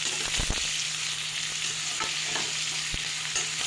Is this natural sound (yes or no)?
yes